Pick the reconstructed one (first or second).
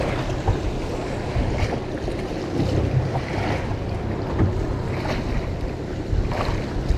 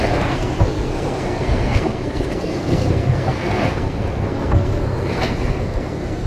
second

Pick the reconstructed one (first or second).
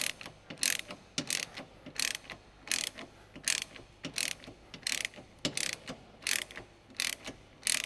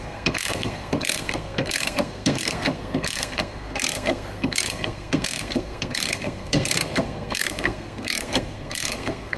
second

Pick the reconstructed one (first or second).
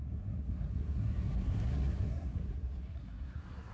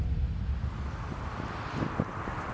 first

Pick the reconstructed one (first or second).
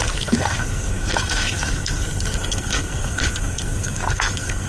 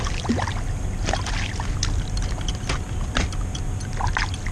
first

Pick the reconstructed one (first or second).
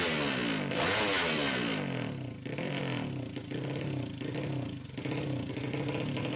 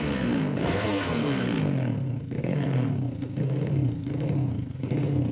second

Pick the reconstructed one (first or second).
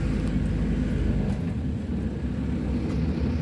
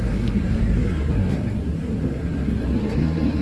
second